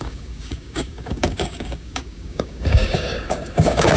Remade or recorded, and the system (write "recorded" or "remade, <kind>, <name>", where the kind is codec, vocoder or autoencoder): remade, codec, DAC